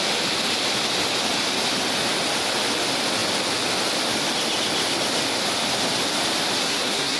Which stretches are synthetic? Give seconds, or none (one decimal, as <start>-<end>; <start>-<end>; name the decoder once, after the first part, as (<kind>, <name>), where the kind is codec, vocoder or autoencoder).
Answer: 6.6-7.2 (codec, SNAC)